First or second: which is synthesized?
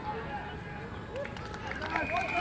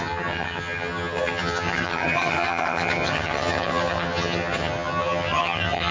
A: second